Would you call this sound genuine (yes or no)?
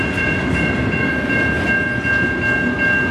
yes